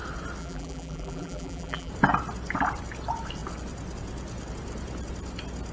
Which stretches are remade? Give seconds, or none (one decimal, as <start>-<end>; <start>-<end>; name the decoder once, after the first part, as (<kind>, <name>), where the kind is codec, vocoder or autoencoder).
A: 0.4-1.9 (vocoder, BigVGAN v2)